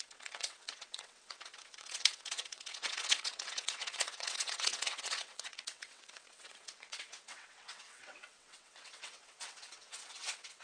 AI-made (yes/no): yes